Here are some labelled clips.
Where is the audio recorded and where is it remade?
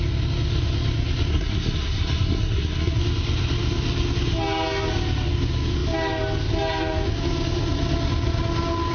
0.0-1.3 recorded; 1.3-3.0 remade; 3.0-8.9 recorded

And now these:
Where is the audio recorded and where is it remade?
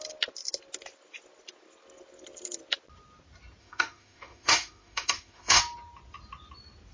0.0-3.6 recorded; 3.6-5.6 remade; 5.6-6.9 recorded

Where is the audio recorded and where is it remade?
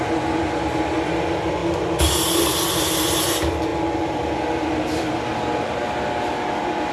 0.0-6.9 recorded